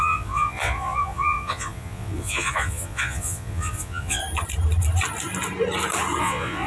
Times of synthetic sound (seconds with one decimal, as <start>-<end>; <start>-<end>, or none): 0.0-4.2; 6.2-6.7